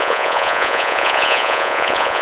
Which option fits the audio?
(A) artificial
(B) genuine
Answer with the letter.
A